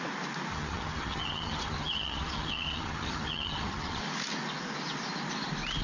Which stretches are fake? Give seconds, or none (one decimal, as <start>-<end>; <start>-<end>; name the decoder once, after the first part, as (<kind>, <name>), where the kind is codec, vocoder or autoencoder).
0.5-4.0 (vocoder, HiFi-GAN)